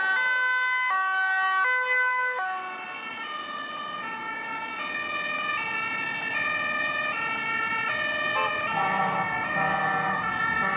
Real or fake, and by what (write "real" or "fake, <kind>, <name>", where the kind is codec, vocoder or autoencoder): real